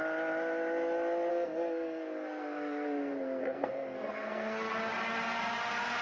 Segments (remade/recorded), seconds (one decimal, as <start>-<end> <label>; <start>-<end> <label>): 0.0-1.3 recorded; 1.3-4.7 remade; 4.7-6.0 recorded